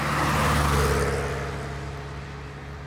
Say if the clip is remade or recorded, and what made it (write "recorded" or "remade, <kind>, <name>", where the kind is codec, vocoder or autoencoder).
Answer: recorded